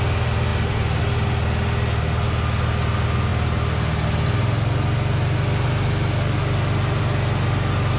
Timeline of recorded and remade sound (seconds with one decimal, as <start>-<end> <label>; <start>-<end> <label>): 0.0-8.0 recorded

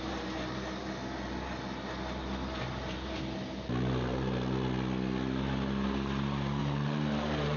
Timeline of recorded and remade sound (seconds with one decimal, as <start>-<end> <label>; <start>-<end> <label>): 0.0-7.6 recorded

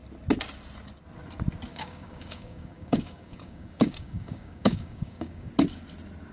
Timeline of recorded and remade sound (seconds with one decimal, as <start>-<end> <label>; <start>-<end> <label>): 0.0-1.7 recorded; 1.7-5.5 remade; 5.5-6.3 recorded